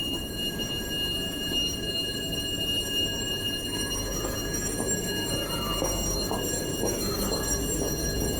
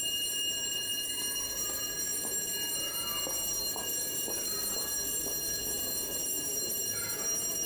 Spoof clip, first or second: first